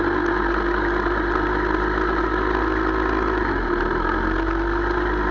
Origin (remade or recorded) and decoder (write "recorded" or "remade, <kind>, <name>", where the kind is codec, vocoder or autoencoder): recorded